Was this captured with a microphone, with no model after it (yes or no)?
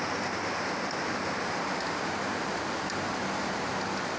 yes